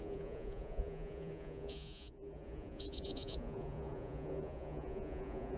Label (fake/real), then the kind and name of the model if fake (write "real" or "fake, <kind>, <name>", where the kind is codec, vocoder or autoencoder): fake, vocoder, Vocos